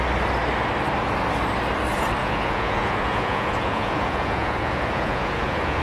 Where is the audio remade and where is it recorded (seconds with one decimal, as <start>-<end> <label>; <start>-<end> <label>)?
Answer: 0.0-2.2 recorded; 2.2-5.8 remade